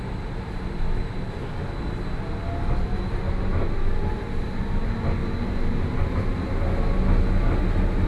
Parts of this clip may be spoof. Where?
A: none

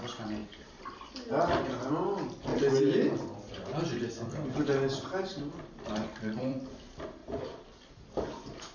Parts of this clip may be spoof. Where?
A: 0.4-1.1 (vocoder, BigVGAN v2); 2.5-6.7; 7.2-7.9

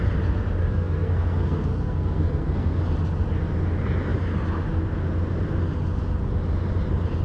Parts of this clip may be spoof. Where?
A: 0.6-2.8 (codec, SNAC)

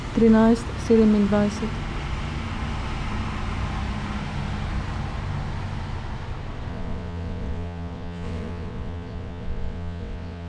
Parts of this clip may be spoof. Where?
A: 6.7-10.5 (vocoder, WaveNeXt)

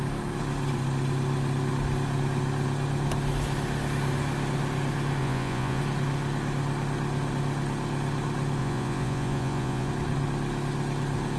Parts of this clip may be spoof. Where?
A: 5.2-5.8 (vocoder, Vocos); 8.6-9.9

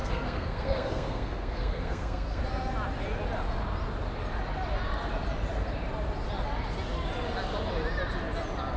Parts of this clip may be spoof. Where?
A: 0.0-2.4 (codec, SNAC)

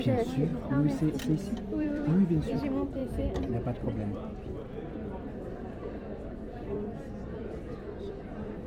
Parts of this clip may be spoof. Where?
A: 0.0-0.5 (vocoder, BigVGAN v2); 1.6-3.0; 5.1-8.7

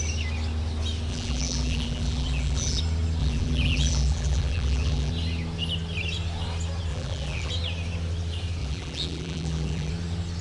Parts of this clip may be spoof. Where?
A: 1.1-2.8 (vocoder, BigVGAN v2); 3.2-5.1; 6.9-7.5; 8.6-9.9